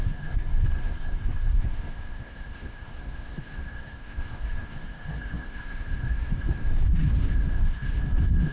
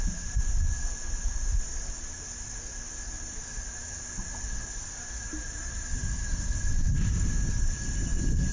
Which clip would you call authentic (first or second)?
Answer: second